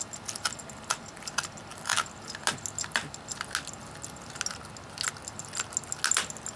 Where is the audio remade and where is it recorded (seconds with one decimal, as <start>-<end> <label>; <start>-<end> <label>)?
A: 0.0-6.6 recorded